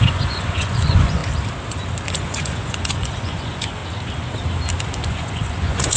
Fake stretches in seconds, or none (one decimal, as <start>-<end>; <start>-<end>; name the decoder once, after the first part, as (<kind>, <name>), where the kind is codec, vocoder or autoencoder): 0.0-1.2 (vocoder, Vocos); 2.1-3.8; 4.8-6.0